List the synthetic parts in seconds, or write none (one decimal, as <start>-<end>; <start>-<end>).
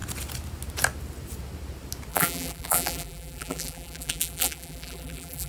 2.1-5.5